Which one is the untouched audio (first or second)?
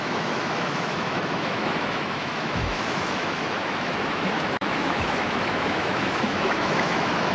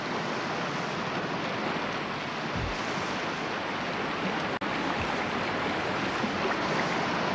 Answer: second